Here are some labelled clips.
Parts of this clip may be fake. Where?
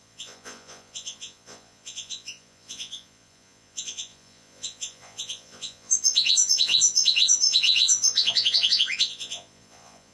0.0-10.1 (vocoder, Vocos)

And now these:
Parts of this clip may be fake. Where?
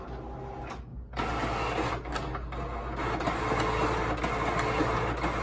none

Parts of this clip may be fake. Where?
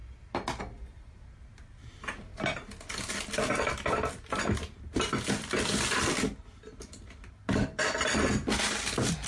none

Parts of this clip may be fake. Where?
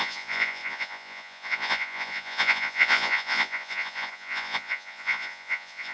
0.0-5.9 (vocoder, Vocos)